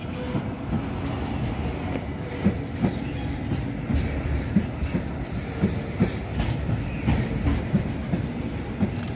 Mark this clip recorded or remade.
recorded